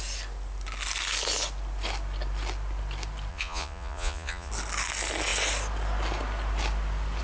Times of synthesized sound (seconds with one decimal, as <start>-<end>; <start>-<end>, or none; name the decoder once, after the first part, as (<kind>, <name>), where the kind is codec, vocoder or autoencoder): 3.3-4.5 (vocoder, Vocos)